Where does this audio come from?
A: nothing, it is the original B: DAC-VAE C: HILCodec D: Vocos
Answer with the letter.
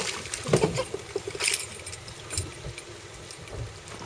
A